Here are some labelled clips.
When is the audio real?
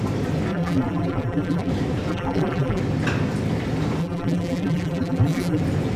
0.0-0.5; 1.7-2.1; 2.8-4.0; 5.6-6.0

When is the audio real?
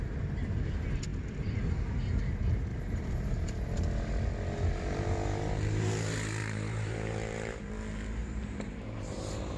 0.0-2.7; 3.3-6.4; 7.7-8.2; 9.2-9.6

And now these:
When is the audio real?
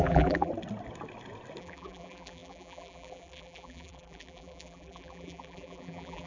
0.5-1.6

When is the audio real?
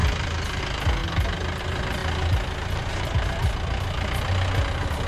0.6-5.1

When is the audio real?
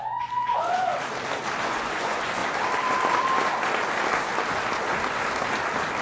0.9-1.6; 2.4-6.0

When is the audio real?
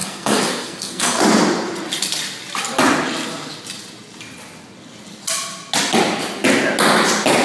1.2-7.4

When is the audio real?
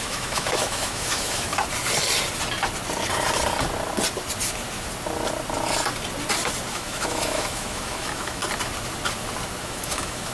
1.5-6.7; 8.4-9.6